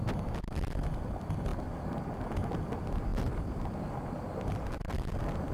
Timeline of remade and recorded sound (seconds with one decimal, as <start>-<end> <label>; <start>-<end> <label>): 0.0-5.5 recorded